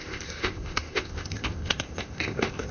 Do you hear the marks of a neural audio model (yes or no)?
yes